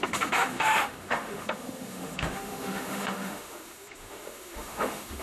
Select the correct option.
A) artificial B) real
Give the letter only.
A